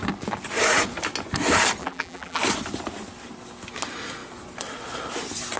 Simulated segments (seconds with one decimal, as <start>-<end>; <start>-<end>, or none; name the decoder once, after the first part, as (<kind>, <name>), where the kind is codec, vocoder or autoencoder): 1.8-2.4 (vocoder, BigVGAN v2)